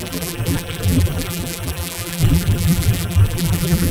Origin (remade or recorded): remade